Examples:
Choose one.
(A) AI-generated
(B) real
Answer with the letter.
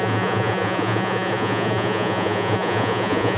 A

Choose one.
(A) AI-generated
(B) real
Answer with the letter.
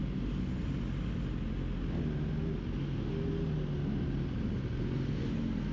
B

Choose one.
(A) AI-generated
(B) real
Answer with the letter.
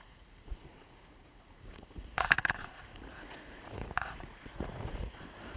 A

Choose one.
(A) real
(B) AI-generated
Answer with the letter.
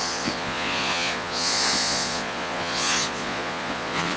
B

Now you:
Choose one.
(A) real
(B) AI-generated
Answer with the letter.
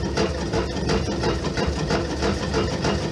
A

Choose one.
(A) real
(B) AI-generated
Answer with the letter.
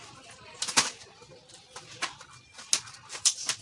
A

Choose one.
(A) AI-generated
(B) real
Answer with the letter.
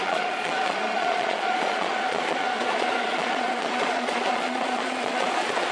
A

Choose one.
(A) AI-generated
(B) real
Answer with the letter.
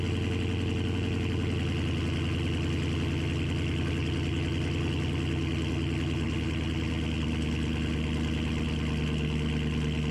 B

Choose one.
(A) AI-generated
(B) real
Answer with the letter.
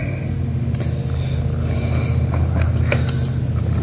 B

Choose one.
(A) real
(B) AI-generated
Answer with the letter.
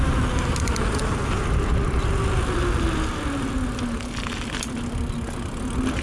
A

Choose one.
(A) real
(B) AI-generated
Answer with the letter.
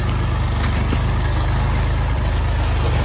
A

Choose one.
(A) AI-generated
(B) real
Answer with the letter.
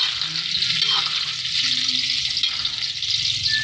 B